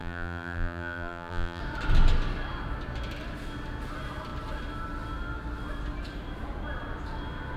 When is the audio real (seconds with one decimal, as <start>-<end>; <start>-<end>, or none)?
1.6-7.6